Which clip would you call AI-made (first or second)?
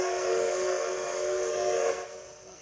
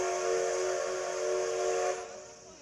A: first